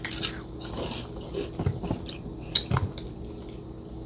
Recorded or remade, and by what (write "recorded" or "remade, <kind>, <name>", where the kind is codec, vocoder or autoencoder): recorded